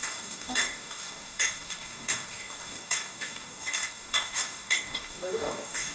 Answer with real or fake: fake